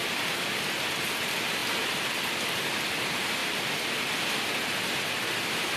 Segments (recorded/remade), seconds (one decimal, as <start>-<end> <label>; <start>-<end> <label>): 0.0-5.8 recorded